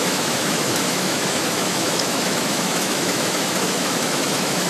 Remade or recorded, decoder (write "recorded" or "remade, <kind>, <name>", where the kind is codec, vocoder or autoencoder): remade, autoencoder, DAC-VAE